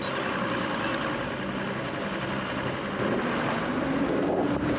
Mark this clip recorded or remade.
recorded